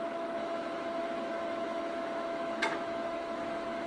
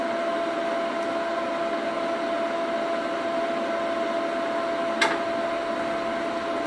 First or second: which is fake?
first